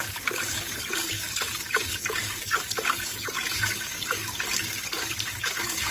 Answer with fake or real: fake